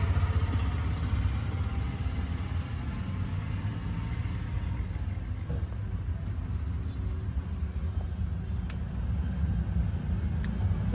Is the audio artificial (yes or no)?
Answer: no